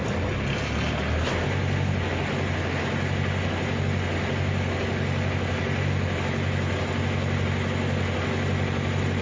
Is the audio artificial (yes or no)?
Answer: no